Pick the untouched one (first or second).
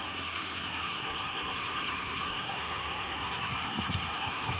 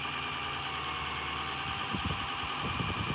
second